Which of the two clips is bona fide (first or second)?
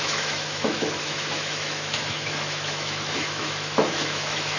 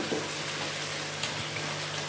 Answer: second